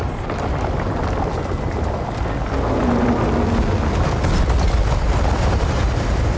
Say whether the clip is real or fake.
real